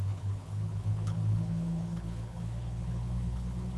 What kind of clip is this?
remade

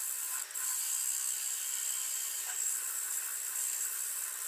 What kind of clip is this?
remade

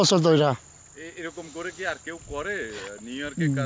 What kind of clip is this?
recorded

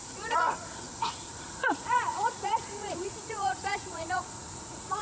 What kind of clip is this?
remade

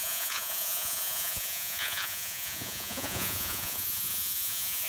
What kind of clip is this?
remade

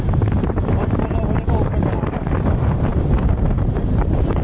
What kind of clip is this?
remade